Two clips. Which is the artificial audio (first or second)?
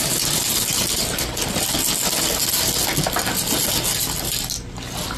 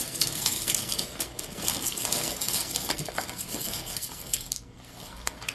second